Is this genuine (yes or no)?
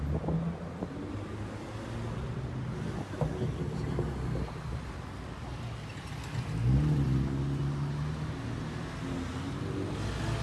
yes